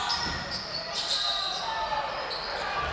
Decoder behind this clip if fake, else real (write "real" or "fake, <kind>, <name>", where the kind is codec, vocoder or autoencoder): real